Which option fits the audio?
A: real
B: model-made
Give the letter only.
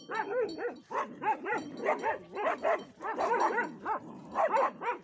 B